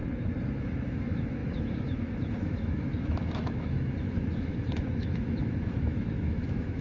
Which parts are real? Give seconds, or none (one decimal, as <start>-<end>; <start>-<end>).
0.0-0.6